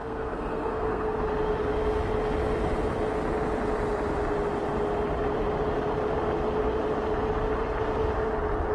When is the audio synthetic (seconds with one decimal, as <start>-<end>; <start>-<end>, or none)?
0.0-1.2